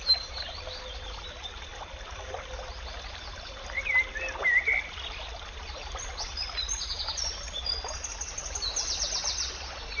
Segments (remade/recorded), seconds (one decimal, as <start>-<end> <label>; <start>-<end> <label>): 0.0-10.0 recorded